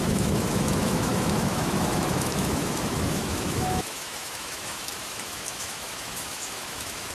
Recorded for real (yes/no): no